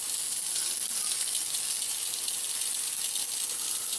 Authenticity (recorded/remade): recorded